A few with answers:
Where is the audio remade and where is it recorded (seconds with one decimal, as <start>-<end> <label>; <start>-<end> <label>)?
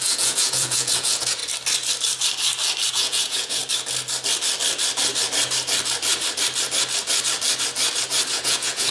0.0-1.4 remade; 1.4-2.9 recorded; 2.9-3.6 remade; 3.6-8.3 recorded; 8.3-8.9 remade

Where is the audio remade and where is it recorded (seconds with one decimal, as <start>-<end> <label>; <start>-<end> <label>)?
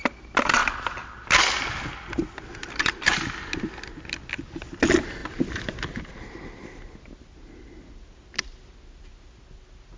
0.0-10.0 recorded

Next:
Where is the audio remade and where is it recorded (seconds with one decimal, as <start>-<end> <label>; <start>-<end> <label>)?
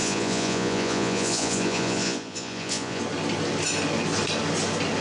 0.0-3.0 remade; 3.0-5.0 recorded